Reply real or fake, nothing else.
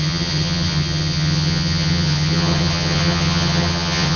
fake